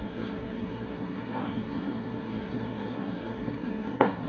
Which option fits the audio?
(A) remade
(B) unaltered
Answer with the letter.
A